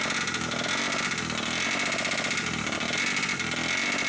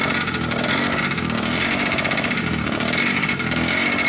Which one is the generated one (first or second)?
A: second